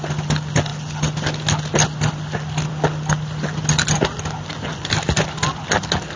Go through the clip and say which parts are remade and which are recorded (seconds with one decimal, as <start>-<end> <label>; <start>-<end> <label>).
0.0-6.2 recorded